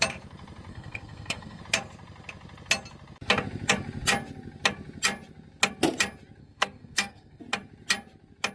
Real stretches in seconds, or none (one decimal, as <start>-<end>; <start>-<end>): 0.0-0.7; 1.6-6.4; 7.4-8.5

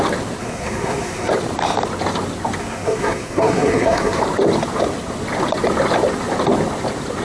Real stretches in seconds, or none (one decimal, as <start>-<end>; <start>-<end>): 0.0-0.4; 1.3-2.6; 4.2-7.2

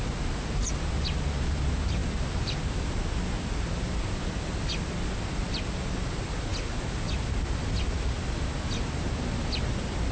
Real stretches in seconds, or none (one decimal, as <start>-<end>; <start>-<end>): 0.0-10.1

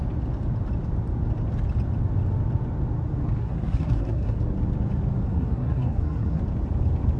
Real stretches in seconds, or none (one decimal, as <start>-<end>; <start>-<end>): 0.0-3.4; 4.4-5.3; 6.4-7.2